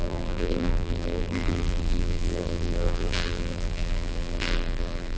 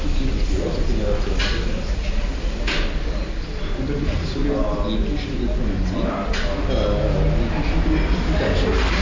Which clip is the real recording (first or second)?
second